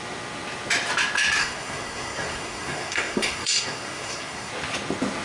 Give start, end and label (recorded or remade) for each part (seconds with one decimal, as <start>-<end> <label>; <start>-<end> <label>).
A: 0.0-1.4 recorded; 1.4-4.5 remade; 4.5-5.2 recorded